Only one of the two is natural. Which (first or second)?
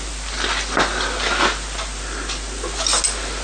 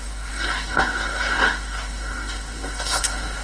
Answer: first